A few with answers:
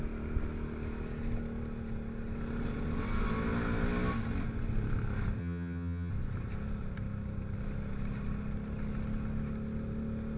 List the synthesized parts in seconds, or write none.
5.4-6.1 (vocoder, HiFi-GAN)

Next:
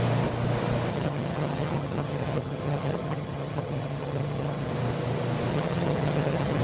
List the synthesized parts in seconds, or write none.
0.9-4.7 (vocoder, HiFi-GAN); 5.5-6.6

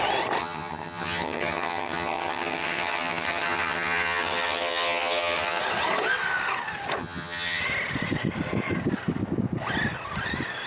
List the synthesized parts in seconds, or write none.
0.4-5.6 (vocoder, HiFi-GAN); 7.0-7.6

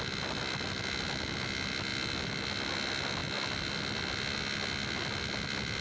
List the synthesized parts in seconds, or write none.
none